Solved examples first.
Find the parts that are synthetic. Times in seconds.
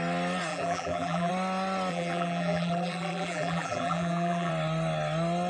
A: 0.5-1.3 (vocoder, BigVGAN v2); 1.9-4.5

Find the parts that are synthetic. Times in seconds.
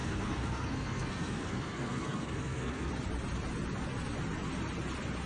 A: 0.0-2.9 (codec, SNAC)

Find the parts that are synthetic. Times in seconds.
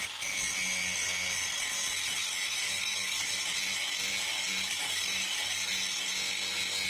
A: 2.6-3.4 (codec, DAC); 4.3-5.7